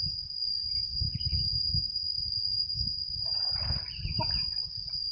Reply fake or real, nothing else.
real